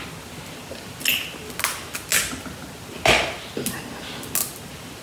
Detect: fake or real real